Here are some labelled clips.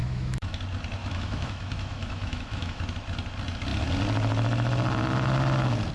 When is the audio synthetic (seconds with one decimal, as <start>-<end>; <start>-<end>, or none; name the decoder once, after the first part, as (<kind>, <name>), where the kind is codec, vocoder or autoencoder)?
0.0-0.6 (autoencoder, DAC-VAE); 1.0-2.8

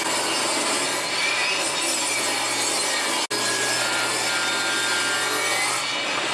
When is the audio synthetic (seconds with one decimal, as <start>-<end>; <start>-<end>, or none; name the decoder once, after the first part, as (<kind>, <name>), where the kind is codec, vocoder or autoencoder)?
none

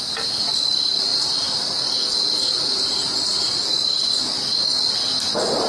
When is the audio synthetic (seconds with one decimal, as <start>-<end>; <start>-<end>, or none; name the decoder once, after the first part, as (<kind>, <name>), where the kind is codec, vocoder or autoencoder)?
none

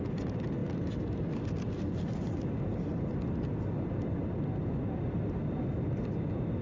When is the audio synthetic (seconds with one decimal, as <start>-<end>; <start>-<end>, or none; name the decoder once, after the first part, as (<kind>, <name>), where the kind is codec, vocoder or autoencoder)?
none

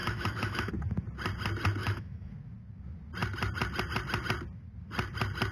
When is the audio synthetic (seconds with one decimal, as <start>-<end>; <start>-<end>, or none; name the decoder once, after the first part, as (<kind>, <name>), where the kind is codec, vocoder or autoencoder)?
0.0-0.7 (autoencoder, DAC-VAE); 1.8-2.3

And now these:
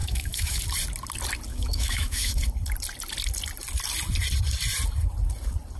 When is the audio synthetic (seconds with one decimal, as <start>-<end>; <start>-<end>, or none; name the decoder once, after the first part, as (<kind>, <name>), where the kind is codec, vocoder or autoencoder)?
0.0-0.6 (autoencoder, DAC-VAE); 1.5-2.4